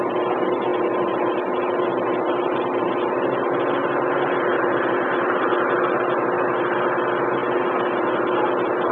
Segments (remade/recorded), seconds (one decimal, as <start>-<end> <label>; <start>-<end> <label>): 0.0-0.7 recorded; 0.7-1.8 remade; 1.8-4.5 recorded; 4.5-5.3 remade; 5.3-8.9 recorded